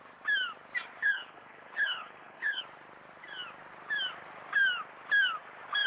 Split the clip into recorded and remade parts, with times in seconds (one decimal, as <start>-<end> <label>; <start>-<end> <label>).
0.0-1.0 recorded; 1.0-2.6 remade; 2.6-5.9 recorded